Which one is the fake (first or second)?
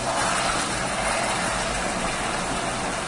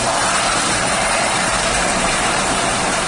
second